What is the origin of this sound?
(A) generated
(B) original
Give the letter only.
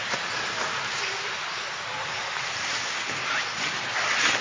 B